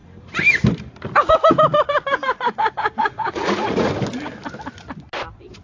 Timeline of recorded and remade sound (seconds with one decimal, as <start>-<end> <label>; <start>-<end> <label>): 0.0-3.0 recorded; 3.0-4.0 remade; 4.0-5.6 recorded